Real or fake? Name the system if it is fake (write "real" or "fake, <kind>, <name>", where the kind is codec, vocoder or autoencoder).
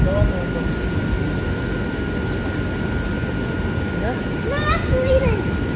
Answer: real